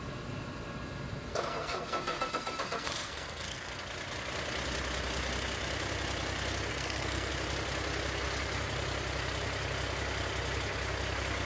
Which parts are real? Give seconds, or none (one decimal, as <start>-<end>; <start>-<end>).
0.0-1.3; 3.8-6.7; 7.3-11.5

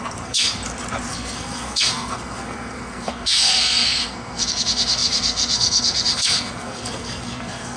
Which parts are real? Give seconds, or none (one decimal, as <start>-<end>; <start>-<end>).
0.6-1.1

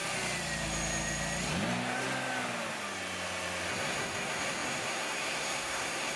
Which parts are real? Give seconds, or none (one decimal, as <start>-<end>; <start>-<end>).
0.0-3.7

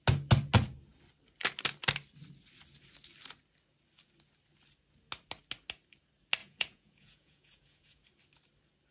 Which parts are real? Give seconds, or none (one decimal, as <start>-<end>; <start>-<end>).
0.0-6.4; 8.1-8.9

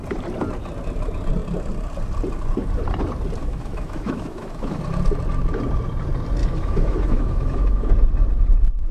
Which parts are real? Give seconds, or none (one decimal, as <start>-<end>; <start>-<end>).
0.0-3.4; 4.8-6.4; 7.9-8.9

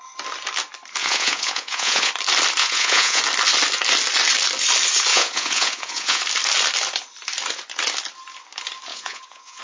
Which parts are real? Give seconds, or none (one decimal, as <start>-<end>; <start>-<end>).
0.0-1.0; 2.1-2.6; 3.2-5.1; 6.2-8.9